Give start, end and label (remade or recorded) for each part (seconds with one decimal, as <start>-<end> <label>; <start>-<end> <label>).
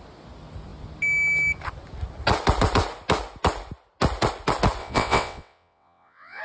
0.0-4.8 recorded; 4.8-6.4 remade